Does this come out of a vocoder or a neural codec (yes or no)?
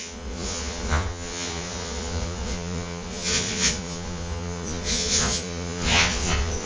yes